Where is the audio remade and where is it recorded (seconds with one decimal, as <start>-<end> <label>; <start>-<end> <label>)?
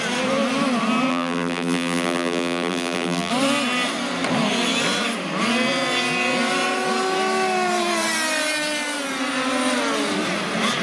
0.0-1.1 recorded; 1.1-3.3 remade; 3.3-10.8 recorded